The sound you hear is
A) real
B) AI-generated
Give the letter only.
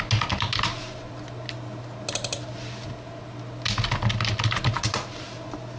A